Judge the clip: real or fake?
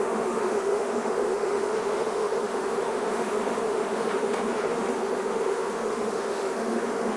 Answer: fake